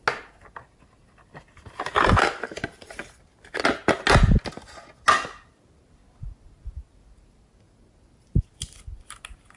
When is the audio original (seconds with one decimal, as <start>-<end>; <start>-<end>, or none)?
0.0-9.6